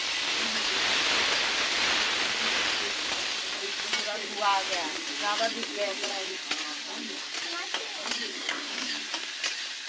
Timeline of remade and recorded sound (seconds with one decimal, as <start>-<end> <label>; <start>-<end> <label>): 0.0-8.3 recorded; 8.3-8.9 remade; 8.9-9.9 recorded

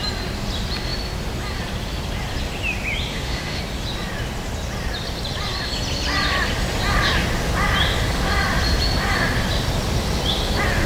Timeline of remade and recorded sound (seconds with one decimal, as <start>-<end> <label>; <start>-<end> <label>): 0.0-3.1 recorded; 3.1-3.6 remade; 3.6-10.9 recorded

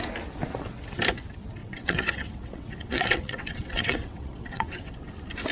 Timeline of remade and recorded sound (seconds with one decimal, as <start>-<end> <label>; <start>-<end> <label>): 0.0-1.6 recorded; 1.6-4.9 remade; 4.9-5.5 recorded

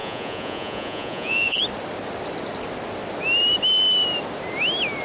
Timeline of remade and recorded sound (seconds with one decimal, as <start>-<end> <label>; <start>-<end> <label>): 0.0-1.6 remade; 1.6-5.0 recorded